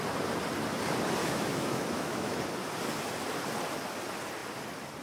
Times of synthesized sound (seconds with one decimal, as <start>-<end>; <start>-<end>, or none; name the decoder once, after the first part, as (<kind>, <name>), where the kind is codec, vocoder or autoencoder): 1.2-2.4 (autoencoder, DAC-VAE)